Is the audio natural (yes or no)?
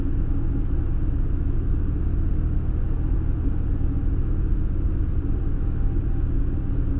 yes